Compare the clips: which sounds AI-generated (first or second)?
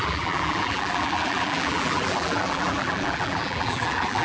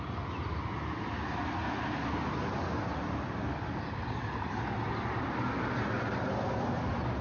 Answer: first